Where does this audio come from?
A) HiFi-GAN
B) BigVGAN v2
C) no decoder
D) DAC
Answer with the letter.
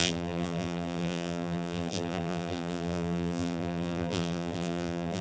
B